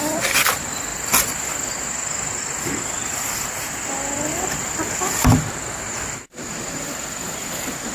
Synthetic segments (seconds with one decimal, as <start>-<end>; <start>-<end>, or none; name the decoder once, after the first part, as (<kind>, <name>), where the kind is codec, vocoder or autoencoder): 4.3-6.8 (vocoder, BigVGAN v2)